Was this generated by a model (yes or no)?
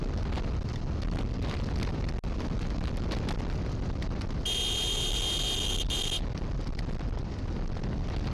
no